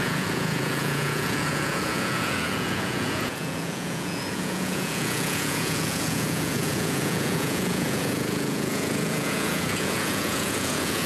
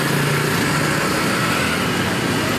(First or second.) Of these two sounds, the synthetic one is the first